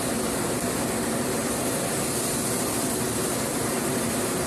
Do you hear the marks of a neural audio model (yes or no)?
no